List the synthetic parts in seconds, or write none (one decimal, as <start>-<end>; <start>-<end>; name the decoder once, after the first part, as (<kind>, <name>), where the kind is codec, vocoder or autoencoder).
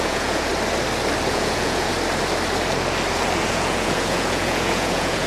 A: 0.0-0.5 (vocoder, Vocos); 1.3-1.9; 3.5-5.3